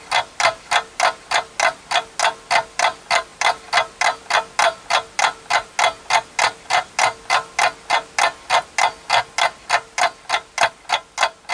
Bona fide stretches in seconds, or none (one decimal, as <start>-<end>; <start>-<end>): 0.0-11.5